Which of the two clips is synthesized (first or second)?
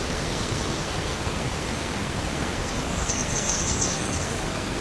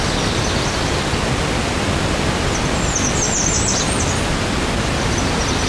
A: first